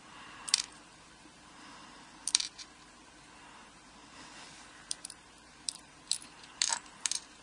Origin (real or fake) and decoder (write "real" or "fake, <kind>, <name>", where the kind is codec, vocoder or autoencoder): fake, vocoder, BigVGAN v2